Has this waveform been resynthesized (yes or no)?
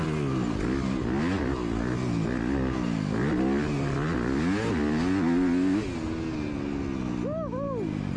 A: no